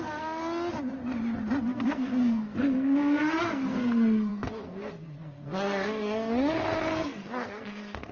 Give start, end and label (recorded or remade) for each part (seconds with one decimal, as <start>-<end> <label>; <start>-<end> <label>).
0.0-0.4 remade; 0.4-1.6 recorded; 1.6-8.1 remade